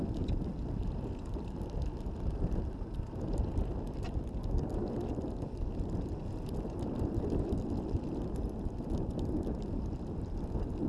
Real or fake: real